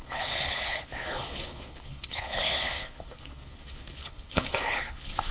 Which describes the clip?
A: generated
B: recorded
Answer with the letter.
A